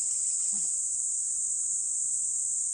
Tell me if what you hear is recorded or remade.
remade